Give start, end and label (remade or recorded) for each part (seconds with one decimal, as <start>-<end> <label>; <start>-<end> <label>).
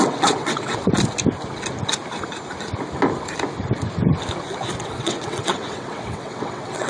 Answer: 0.0-0.9 remade; 0.9-4.8 recorded; 4.8-6.9 remade